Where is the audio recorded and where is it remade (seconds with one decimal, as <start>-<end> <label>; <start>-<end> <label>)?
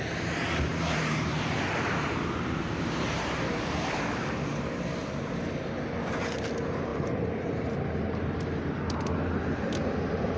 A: 0.0-0.7 recorded; 0.7-3.4 remade; 3.4-6.9 recorded; 6.9-7.7 remade; 7.7-10.4 recorded